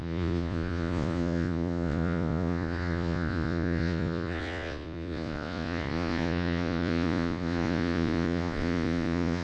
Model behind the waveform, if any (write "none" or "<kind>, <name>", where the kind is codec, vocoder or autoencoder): vocoder, Vocos